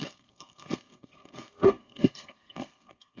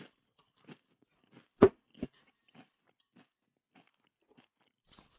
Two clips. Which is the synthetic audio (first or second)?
first